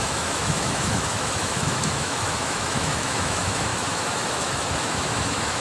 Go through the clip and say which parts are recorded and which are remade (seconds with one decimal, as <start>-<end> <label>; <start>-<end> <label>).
0.0-5.6 remade